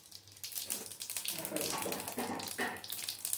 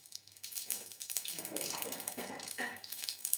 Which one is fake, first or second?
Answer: second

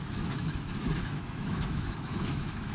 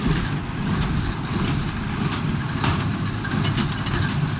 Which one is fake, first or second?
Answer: first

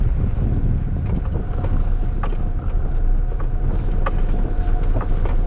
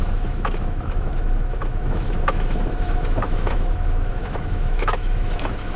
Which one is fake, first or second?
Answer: second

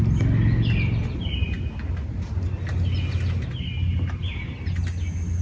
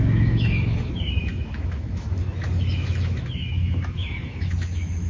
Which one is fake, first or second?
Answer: second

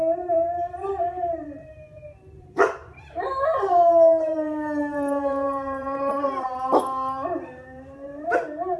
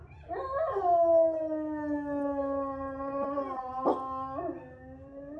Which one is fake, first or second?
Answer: first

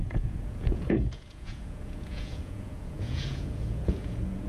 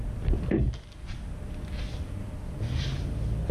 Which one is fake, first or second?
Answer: first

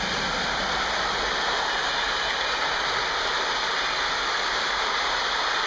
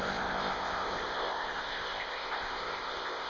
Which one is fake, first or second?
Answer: second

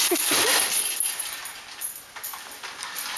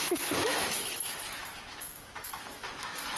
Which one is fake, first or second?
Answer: second